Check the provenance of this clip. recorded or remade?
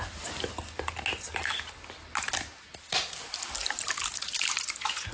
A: recorded